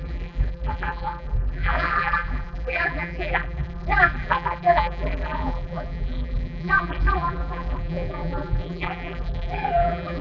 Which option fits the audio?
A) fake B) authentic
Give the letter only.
A